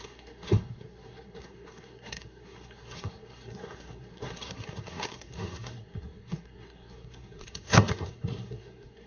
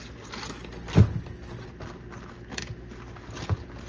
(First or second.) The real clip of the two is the second